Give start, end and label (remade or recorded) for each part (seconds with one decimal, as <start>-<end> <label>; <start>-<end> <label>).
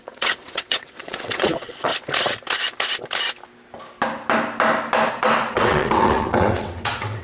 0.0-1.9 remade; 1.9-5.1 recorded; 5.1-7.2 remade